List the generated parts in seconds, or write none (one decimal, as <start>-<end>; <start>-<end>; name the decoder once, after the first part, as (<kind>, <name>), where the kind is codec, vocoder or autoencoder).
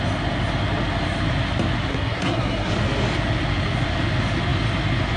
1.9-2.7 (codec, SNAC)